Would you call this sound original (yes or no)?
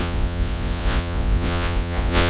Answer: no